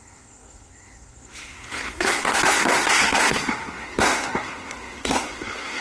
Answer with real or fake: fake